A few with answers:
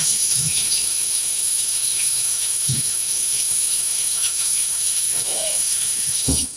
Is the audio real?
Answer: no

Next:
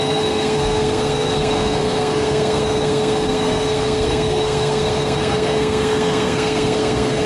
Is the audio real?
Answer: no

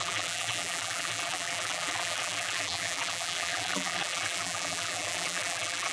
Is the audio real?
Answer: no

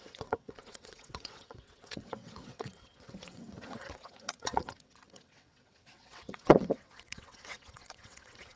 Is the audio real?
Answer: no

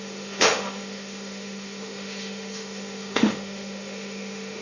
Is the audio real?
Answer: no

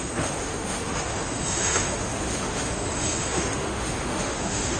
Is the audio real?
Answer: no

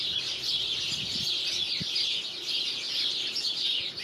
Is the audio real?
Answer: yes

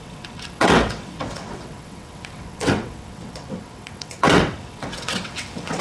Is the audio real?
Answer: no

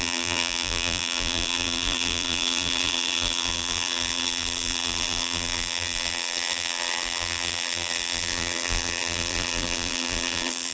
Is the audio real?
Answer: no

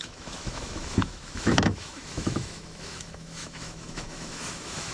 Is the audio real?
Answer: no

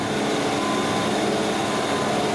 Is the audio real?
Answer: yes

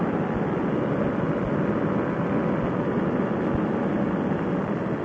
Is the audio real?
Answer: yes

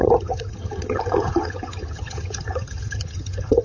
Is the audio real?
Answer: no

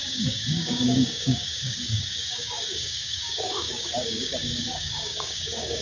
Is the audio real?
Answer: no